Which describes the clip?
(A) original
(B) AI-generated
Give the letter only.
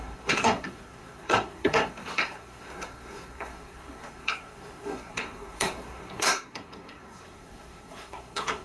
B